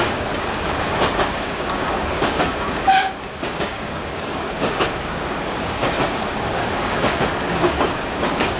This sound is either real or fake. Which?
fake